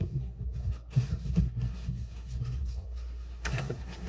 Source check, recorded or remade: remade